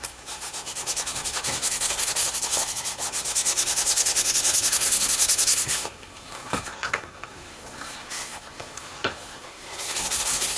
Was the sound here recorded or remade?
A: remade